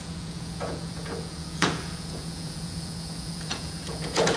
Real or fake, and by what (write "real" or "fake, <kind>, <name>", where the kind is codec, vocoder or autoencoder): fake, vocoder, Vocos